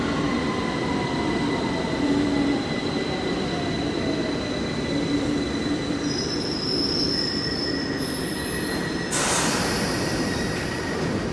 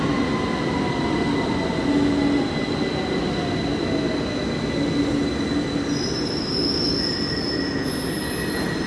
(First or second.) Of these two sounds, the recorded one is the second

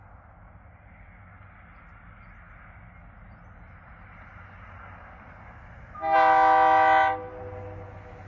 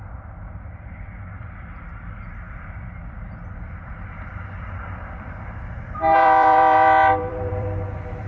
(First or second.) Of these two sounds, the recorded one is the first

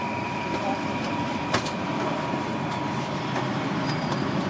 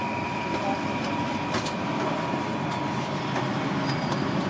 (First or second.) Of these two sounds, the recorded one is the second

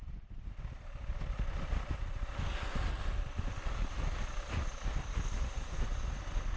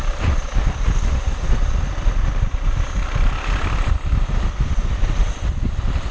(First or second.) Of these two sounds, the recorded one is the first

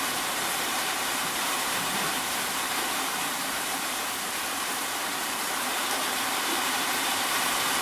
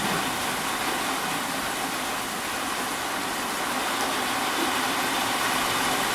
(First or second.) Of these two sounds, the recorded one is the second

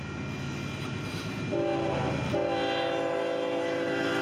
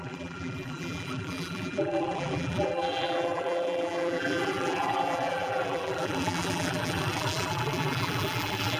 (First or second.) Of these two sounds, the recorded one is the first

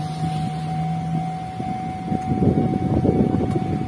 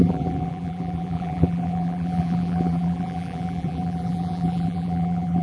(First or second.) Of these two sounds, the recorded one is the first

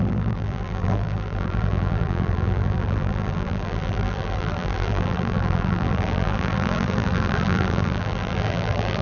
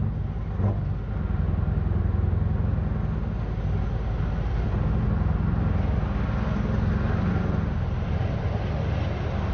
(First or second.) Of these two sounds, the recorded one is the second